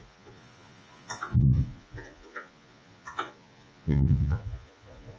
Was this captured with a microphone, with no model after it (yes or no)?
no